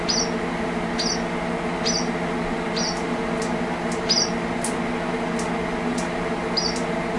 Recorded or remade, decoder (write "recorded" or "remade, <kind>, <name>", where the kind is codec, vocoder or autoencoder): recorded